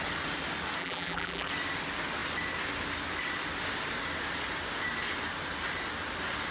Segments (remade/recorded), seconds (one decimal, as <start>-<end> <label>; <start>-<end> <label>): 0.0-0.8 recorded; 0.8-1.5 remade; 1.5-6.5 recorded